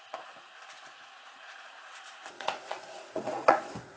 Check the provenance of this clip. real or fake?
fake